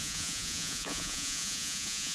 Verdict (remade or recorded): remade